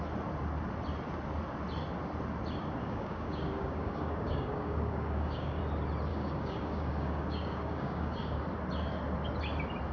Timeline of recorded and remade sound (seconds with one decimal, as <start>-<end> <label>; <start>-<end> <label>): 0.0-2.8 recorded; 2.8-5.6 remade; 5.6-6.1 recorded; 6.1-8.4 remade; 8.4-9.9 recorded